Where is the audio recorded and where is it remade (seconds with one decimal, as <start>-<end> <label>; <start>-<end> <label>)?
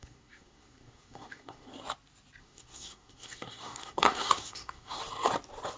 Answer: 0.0-1.7 remade; 1.7-2.4 recorded; 2.4-5.0 remade; 5.0-5.8 recorded